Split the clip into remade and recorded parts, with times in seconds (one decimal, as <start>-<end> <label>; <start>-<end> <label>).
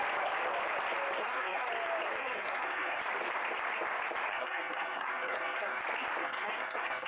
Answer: 0.0-1.2 recorded; 1.2-1.7 remade; 1.7-2.2 recorded; 2.2-3.0 remade; 3.0-4.3 recorded; 4.3-5.8 remade; 5.8-6.2 recorded; 6.2-7.1 remade